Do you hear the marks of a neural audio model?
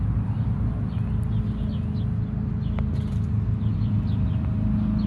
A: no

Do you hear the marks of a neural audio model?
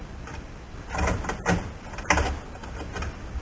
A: no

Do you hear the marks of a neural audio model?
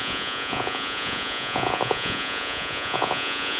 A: yes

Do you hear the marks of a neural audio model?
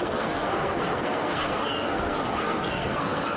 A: yes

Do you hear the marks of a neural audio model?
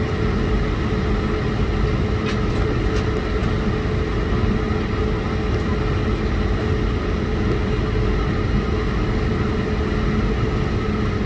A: no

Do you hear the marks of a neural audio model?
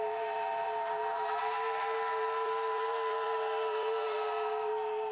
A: yes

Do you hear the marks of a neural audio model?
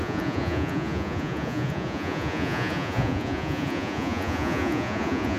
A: yes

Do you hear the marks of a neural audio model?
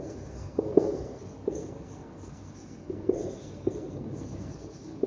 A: yes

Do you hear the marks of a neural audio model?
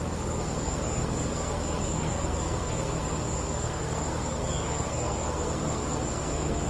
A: yes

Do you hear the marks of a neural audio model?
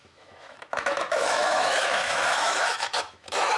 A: yes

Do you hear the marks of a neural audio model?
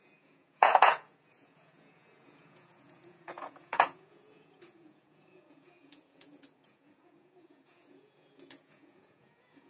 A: yes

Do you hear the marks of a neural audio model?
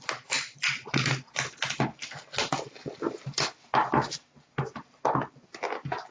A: no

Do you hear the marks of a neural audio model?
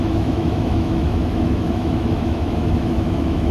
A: yes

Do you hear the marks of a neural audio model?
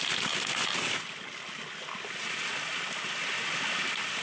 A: no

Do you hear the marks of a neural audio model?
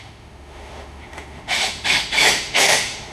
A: yes